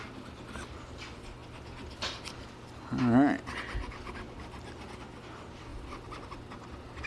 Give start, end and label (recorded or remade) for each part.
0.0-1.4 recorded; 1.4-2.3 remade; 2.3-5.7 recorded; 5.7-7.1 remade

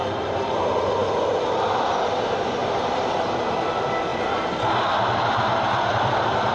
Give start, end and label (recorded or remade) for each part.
0.0-0.6 remade; 0.6-1.0 recorded; 1.0-1.9 remade; 1.9-2.6 recorded; 2.6-3.4 remade; 3.4-4.1 recorded; 4.1-6.5 remade